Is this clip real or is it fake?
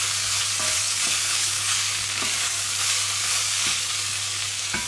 fake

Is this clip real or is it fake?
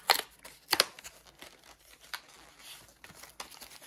real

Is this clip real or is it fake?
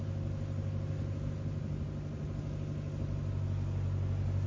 real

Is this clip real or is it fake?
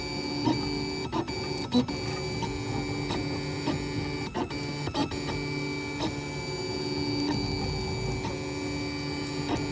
real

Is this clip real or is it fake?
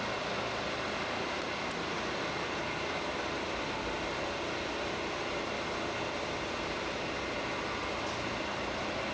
real